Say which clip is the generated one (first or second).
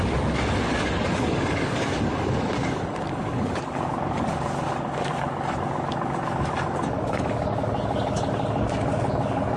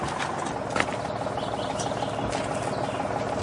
first